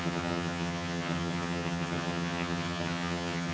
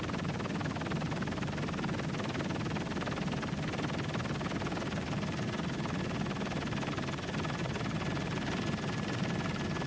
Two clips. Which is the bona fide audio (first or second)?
second